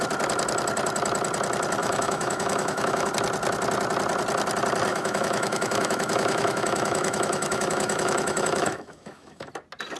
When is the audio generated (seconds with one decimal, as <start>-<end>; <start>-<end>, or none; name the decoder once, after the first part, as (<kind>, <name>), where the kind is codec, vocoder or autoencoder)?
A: 1.8-3.1 (autoencoder, DAC-VAE); 4.9-9.5